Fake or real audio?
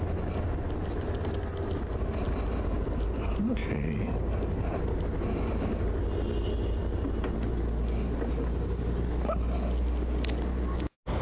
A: real